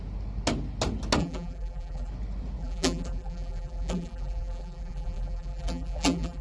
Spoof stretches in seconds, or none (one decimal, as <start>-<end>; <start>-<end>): 1.2-2.1; 2.6-6.4